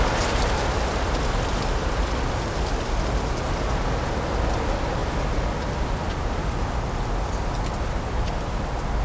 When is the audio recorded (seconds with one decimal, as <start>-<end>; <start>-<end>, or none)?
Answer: 0.0-9.0